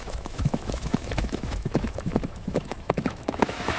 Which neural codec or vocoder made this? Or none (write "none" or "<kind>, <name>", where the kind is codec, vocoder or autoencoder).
autoencoder, DAC-VAE